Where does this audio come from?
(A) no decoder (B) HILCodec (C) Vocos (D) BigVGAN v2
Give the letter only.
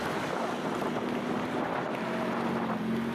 A